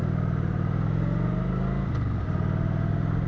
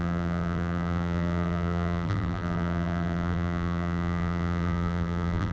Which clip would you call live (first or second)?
first